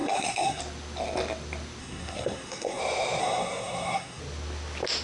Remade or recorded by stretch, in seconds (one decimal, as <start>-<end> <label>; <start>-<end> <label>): 0.0-0.6 remade; 0.6-1.8 recorded; 1.8-2.8 remade; 2.8-3.2 recorded; 3.2-4.2 remade; 4.2-5.0 recorded